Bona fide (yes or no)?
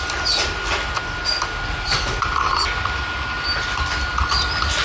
yes